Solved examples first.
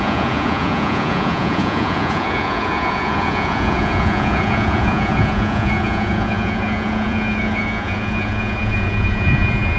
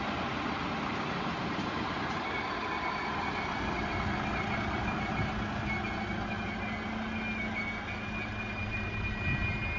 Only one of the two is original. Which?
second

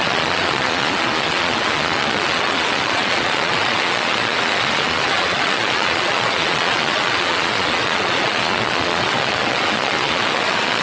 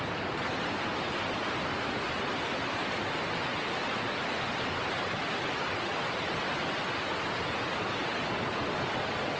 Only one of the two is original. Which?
second